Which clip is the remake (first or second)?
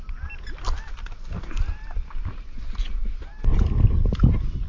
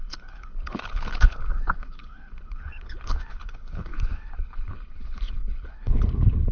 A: second